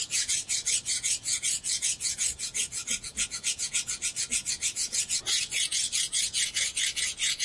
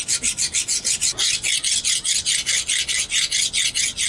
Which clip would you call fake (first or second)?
first